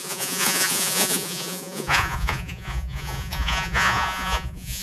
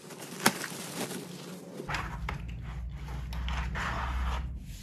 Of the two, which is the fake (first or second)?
first